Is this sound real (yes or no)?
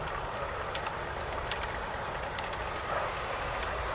yes